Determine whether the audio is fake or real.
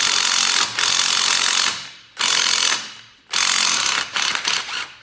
real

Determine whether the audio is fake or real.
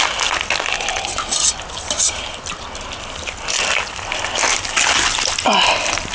real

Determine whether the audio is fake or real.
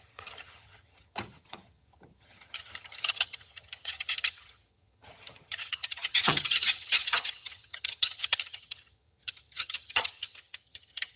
fake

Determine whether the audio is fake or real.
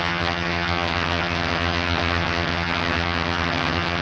fake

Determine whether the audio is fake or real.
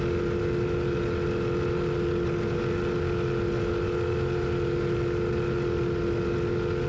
real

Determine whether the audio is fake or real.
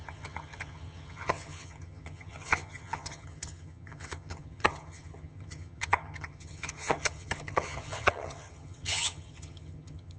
fake